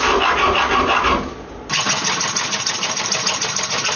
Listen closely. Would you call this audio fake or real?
real